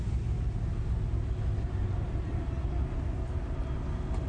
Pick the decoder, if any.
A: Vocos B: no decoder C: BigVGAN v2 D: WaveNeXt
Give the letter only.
B